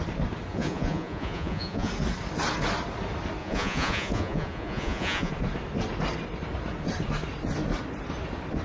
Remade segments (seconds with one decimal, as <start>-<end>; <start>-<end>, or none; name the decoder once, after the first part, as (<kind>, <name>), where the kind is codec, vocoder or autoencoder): 0.5-1.9 (vocoder, Vocos); 3.4-5.3